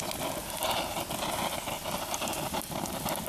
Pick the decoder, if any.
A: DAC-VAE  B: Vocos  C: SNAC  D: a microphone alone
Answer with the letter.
D